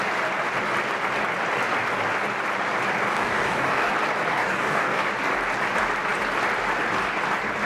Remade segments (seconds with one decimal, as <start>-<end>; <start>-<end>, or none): 3.1-3.9; 4.3-5.1